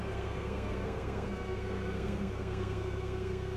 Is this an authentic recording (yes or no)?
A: no